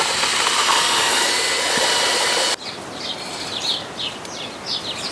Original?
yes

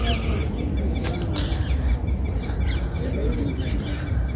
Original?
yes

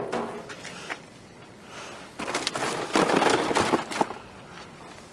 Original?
yes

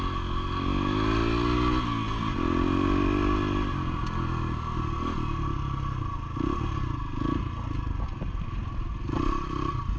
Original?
yes